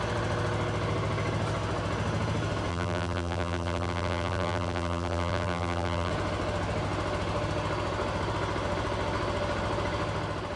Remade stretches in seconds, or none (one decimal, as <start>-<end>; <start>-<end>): 2.7-6.1